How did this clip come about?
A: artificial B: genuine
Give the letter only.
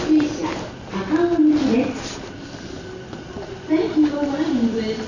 B